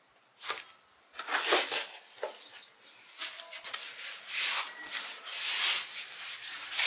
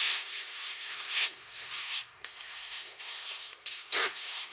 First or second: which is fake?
second